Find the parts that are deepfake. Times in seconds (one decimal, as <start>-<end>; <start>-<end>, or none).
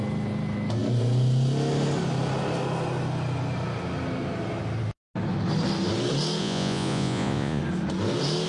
6.4-7.6